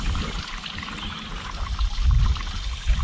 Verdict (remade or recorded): recorded